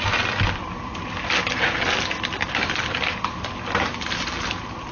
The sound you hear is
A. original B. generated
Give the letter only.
A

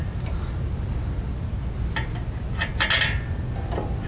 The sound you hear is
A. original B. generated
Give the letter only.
A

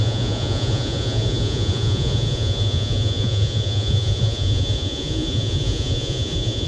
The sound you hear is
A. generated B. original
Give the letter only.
A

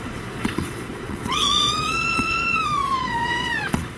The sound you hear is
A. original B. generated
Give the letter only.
B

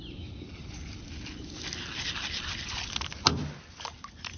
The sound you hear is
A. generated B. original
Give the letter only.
B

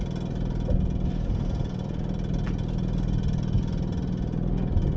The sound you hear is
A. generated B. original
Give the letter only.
B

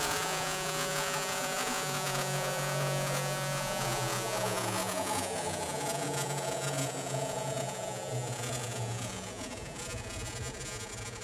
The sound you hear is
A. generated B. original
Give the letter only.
A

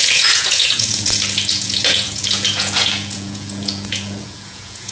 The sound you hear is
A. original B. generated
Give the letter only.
B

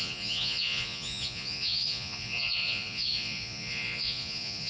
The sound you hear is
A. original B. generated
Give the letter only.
B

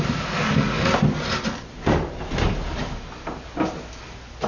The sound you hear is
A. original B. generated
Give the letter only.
A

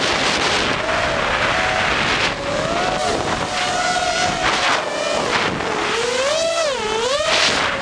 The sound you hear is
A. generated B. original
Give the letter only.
B